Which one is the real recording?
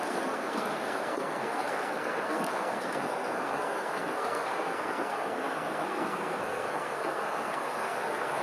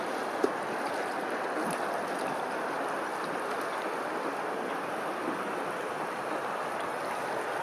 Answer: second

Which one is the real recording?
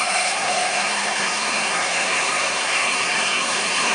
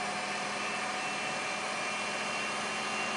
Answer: second